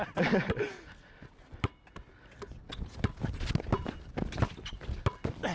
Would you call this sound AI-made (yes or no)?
no